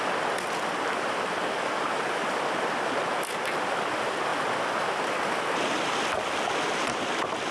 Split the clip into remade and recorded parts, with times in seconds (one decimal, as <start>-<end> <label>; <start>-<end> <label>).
0.0-7.5 recorded